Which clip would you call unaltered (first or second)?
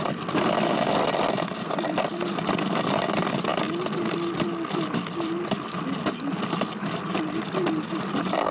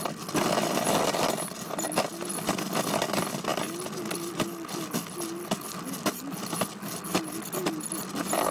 second